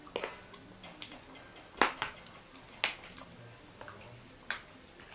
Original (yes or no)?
yes